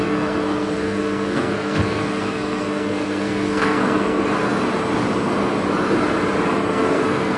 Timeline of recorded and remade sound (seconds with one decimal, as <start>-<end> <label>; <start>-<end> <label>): 0.0-4.2 remade; 4.2-6.7 recorded; 6.7-7.4 remade